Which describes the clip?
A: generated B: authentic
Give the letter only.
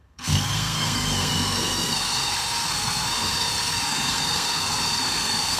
A